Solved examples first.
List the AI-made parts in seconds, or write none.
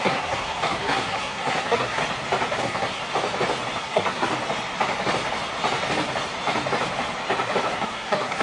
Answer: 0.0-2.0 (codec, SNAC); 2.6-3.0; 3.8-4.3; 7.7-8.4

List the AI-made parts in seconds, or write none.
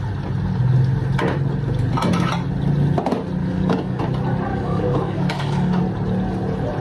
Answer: 3.4-4.0 (codec, DAC); 4.5-5.8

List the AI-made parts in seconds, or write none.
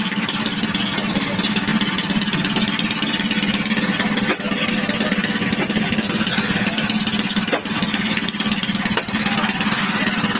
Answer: none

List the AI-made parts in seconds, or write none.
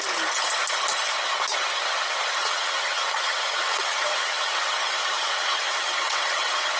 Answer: 2.4-6.8 (vocoder, WaveNeXt)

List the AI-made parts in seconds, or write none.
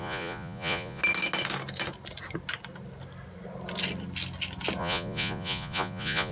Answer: 0.0-1.0 (vocoder, Vocos); 4.8-6.3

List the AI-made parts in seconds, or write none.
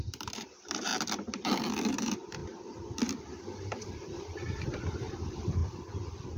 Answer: 0.0-0.9 (vocoder, BigVGAN v2); 1.9-2.4; 3.3-5.6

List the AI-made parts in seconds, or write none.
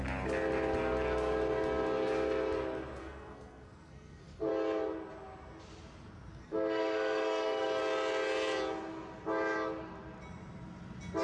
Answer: 3.0-4.5 (codec, SNAC); 6.3-7.8